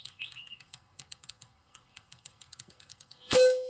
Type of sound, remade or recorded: remade